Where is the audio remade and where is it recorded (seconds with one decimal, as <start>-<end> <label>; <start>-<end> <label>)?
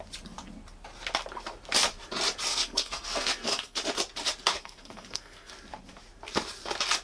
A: 0.0-2.5 recorded; 2.5-3.8 remade; 3.8-4.5 recorded; 4.5-5.5 remade; 5.5-7.0 recorded